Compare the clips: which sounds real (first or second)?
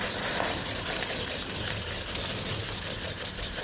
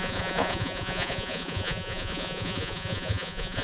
first